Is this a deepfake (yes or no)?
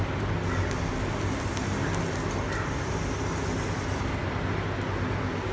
no